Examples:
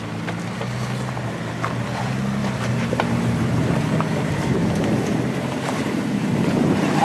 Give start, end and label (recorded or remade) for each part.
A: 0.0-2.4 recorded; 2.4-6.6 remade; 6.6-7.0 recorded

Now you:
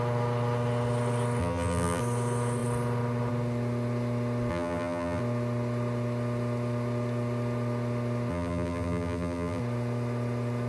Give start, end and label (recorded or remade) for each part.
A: 0.0-1.4 recorded; 1.4-2.0 remade; 2.0-4.5 recorded; 4.5-5.2 remade; 5.2-8.3 recorded; 8.3-9.6 remade; 9.6-10.7 recorded

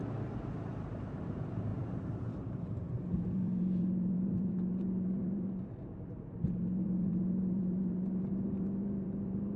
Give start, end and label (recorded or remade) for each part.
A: 0.0-9.6 remade

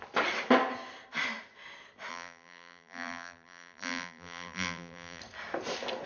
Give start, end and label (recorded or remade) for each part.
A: 0.0-2.1 recorded; 2.1-5.2 remade; 5.2-6.1 recorded

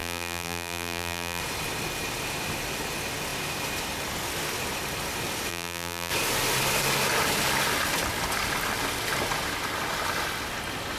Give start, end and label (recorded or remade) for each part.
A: 0.0-1.4 remade; 1.4-5.5 recorded; 5.5-6.1 remade; 6.1-11.0 recorded

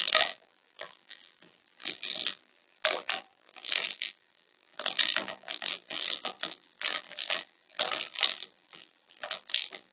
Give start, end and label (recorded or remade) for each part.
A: 0.0-9.9 remade

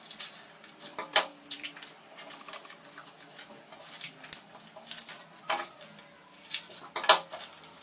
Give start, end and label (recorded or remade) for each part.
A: 0.0-1.1 recorded; 1.1-1.7 remade; 1.7-7.8 recorded